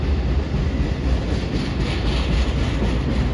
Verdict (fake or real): real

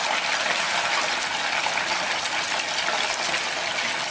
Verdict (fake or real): real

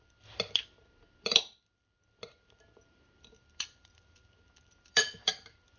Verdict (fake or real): fake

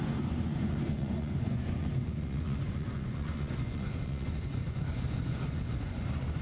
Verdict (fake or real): fake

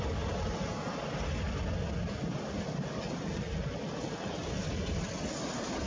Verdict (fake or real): real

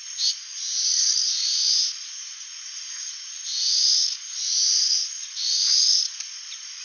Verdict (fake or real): fake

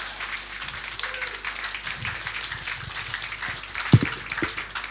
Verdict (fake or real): real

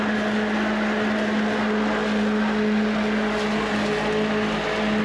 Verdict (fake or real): real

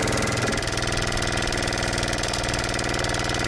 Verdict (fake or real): real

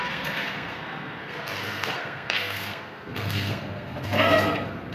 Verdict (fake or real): fake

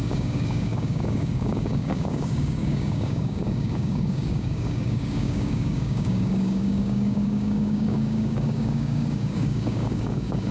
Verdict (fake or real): fake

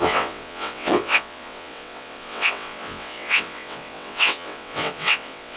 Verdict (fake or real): fake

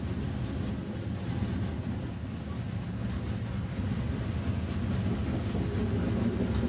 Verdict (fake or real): real